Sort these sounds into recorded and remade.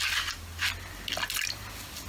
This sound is recorded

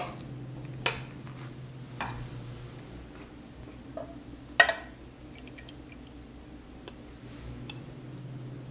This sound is recorded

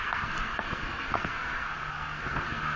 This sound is remade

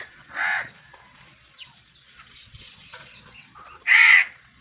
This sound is remade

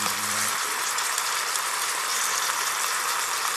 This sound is remade